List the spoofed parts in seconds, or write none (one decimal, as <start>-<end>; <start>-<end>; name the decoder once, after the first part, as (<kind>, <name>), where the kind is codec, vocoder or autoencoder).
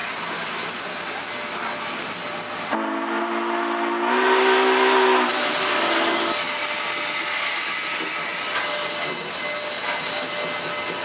none